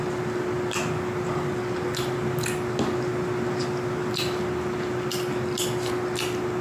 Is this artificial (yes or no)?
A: no